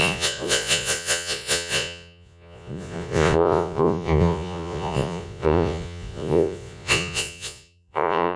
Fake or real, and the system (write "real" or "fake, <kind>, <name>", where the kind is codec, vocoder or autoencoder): fake, vocoder, Vocos